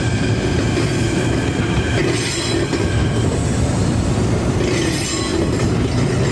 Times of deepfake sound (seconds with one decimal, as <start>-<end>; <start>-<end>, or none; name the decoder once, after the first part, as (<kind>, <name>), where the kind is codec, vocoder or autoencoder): 5.3-5.8 (vocoder, BigVGAN v2)

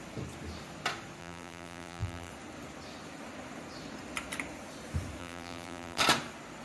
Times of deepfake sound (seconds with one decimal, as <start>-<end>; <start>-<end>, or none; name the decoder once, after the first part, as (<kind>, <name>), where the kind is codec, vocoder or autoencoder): 1.2-2.3 (vocoder, BigVGAN v2); 5.2-6.0

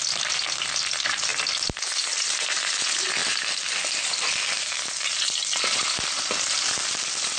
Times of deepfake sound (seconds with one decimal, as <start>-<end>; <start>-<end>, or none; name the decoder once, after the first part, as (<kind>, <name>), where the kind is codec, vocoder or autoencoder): 3.2-3.8 (vocoder, BigVGAN v2)

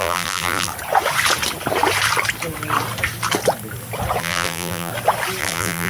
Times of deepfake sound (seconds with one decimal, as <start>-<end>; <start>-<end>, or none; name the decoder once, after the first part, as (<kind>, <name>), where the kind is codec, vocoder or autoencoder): 0.0-0.7 (vocoder, BigVGAN v2); 4.2-4.9; 5.4-5.9

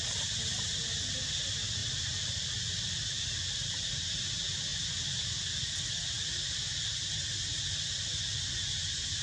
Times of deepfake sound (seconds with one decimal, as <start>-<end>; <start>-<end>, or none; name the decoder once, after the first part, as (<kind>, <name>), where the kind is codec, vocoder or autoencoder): 1.8-4.0 (vocoder, BigVGAN v2); 4.7-7.1; 8.1-9.2

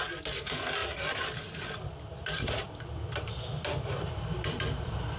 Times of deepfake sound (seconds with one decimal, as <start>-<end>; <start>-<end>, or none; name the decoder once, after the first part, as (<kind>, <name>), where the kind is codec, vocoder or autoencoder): 0.8-1.6 (vocoder, BigVGAN v2); 2.1-5.2